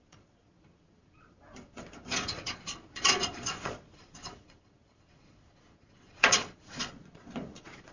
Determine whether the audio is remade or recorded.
remade